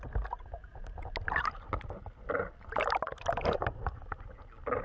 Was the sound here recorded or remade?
recorded